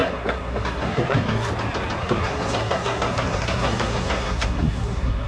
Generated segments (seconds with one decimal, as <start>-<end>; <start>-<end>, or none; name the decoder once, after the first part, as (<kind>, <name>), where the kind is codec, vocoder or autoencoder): 0.0-1.5 (codec, SNAC); 2.0-5.3